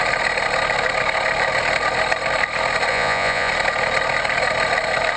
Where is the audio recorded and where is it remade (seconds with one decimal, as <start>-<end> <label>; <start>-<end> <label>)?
0.0-2.9 recorded; 2.9-3.5 remade; 3.5-5.2 recorded